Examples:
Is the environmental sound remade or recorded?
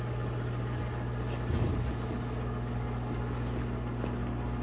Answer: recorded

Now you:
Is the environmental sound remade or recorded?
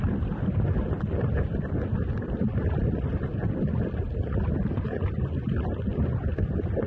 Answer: recorded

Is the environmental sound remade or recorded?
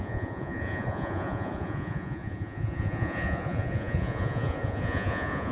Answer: remade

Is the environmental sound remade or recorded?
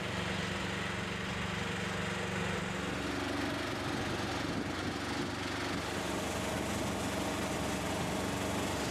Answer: recorded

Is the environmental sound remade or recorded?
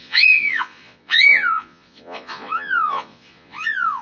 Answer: remade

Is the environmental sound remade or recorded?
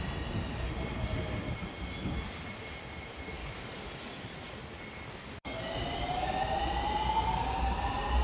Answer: recorded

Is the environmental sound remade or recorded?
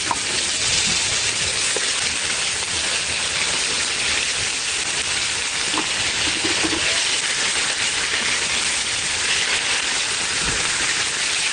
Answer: recorded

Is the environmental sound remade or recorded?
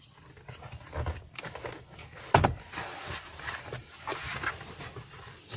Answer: recorded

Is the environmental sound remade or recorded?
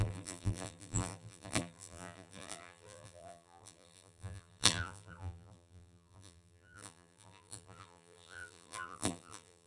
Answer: remade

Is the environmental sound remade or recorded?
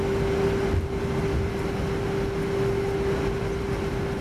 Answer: recorded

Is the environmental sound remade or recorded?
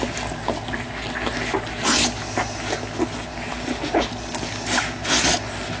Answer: recorded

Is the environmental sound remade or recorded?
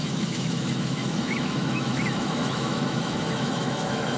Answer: remade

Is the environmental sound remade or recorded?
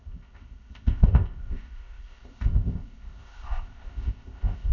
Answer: remade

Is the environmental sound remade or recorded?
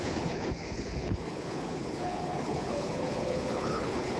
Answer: remade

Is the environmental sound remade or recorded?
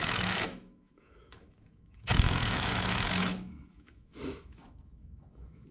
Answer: remade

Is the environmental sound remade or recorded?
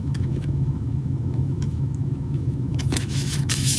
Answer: remade